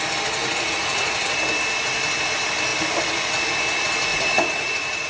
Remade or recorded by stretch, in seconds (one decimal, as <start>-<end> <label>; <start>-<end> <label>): 0.0-0.4 recorded; 0.4-1.2 remade; 1.2-4.1 recorded; 4.1-5.1 remade